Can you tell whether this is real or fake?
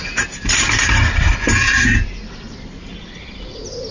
fake